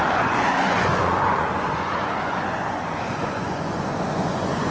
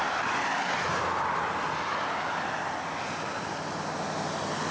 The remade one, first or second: first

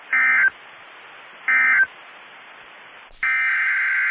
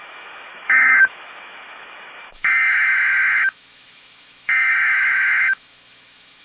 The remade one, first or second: second